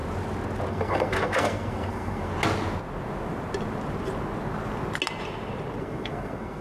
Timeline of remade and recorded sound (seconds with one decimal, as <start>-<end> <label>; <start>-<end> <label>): 0.0-0.7 recorded; 0.7-2.3 remade; 2.3-5.8 recorded; 5.8-6.6 remade